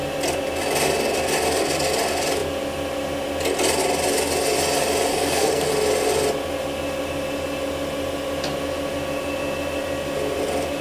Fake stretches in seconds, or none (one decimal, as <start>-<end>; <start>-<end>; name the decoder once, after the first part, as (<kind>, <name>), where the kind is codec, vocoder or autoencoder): 5.1-5.7 (codec, SNAC)